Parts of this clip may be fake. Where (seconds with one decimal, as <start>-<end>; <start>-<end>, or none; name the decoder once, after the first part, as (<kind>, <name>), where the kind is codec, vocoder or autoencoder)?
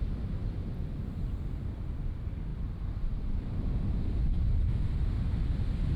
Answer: none